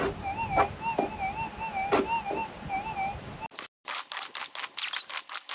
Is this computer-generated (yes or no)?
no